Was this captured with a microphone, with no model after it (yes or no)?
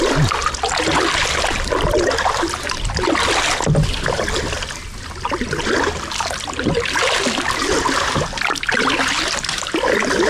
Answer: yes